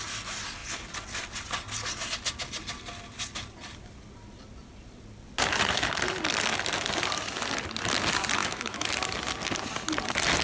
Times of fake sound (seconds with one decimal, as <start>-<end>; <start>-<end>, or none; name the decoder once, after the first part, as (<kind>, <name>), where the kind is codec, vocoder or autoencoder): 8.4-8.9 (autoencoder, DAC-VAE)